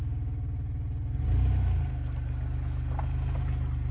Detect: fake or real real